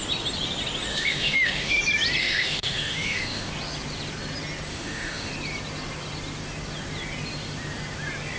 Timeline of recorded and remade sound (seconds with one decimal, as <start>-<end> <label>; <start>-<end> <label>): 0.0-0.9 recorded; 0.9-1.8 remade; 1.8-2.2 recorded; 2.2-3.5 remade; 3.5-4.7 recorded; 4.7-5.3 remade; 5.3-8.4 recorded